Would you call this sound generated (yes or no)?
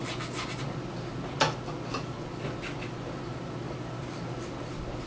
no